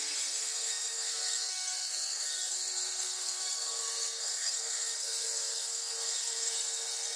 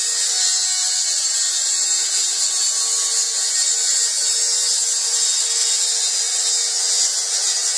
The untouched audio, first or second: second